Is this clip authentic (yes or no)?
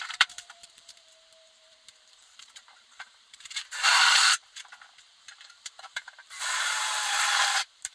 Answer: no